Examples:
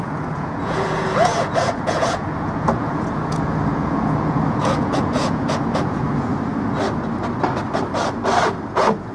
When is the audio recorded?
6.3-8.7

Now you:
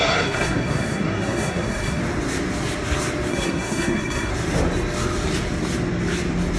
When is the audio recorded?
2.0-3.3; 4.3-6.6

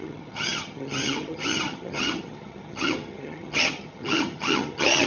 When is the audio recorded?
none

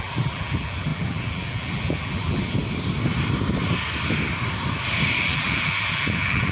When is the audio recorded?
2.6-5.2

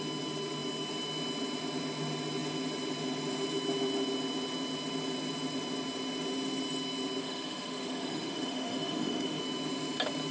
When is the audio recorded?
0.0-7.2; 9.4-10.3

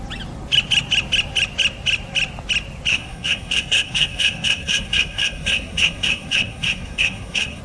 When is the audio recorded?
0.0-2.9

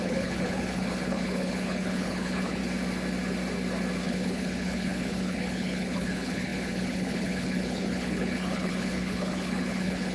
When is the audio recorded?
2.6-4.0